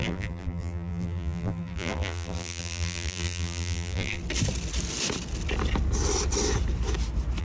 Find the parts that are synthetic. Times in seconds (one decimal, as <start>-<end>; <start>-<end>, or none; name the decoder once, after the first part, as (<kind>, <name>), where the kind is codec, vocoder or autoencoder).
0.0-4.2 (vocoder, BigVGAN v2)